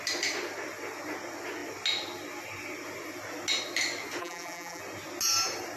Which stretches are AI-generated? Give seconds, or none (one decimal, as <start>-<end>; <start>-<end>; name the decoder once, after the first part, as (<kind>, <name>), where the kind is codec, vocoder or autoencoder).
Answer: 4.2-4.8 (vocoder, BigVGAN v2)

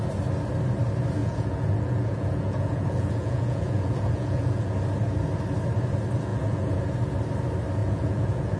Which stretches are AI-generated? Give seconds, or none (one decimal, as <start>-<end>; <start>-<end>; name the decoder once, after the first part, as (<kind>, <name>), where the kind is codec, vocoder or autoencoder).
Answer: 1.2-4.7 (vocoder, Vocos); 6.3-6.8; 7.8-8.6

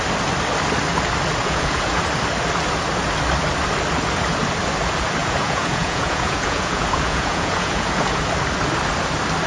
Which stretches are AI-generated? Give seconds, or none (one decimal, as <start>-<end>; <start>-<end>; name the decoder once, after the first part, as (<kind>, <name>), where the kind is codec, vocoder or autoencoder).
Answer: 1.4-2.0 (vocoder, Vocos); 5.2-8.2

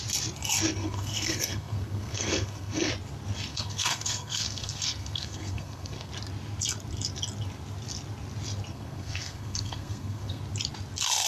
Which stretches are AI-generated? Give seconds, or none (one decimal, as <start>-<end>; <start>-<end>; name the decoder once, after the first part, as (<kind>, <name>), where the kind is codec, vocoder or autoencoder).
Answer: 0.8-2.9 (codec, SNAC); 3.5-6.1; 8.7-10.4

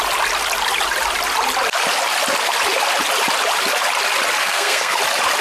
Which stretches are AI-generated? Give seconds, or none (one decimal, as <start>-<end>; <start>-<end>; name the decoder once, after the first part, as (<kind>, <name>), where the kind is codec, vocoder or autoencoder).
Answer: 4.4-5.0 (codec, SNAC)

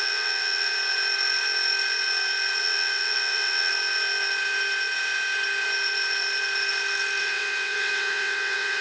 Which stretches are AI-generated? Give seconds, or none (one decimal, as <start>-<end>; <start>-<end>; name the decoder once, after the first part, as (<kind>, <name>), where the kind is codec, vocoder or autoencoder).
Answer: 0.0-0.7 (vocoder, WaveNeXt); 2.6-3.7; 7.2-8.8

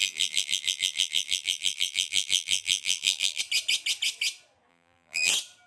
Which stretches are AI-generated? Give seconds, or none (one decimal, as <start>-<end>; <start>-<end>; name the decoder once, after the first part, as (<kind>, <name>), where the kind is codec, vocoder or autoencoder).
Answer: 0.0-3.4 (vocoder, BigVGAN v2); 4.7-5.3

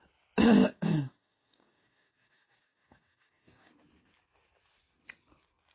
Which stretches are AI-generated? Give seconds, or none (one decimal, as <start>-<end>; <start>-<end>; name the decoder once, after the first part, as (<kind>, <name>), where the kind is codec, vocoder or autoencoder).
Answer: 0.6-3.7 (codec, DAC)